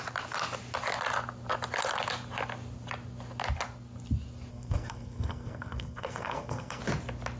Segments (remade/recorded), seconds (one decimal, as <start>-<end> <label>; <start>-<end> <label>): 0.0-4.5 recorded; 4.5-6.8 remade; 6.8-7.4 recorded